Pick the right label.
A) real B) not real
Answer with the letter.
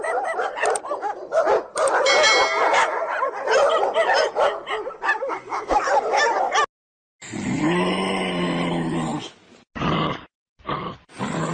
A